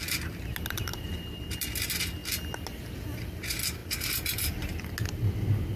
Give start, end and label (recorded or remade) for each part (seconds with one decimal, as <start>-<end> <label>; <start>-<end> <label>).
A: 0.0-5.8 recorded